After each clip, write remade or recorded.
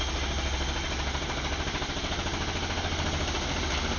recorded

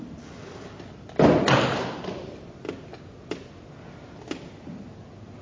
recorded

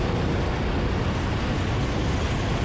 recorded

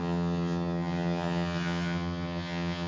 remade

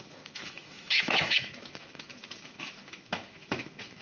remade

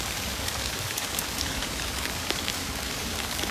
remade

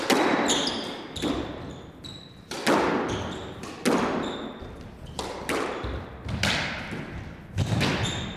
recorded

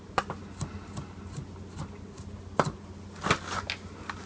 recorded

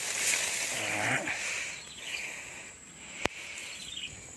recorded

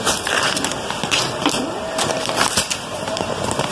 remade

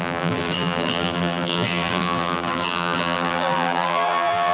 remade